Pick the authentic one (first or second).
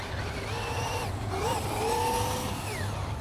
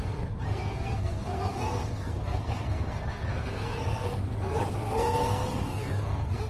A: first